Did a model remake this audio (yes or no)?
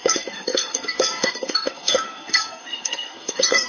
yes